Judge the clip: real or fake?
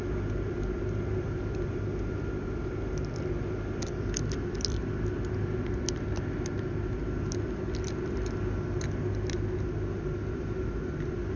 real